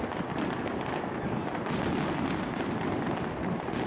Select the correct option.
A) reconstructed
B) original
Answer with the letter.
B